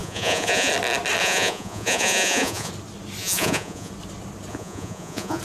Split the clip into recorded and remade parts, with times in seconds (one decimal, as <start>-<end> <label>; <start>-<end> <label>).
0.0-0.7 remade; 0.7-1.2 recorded; 1.2-2.7 remade; 2.7-3.2 recorded; 3.2-3.9 remade; 3.9-4.5 recorded; 4.5-5.4 remade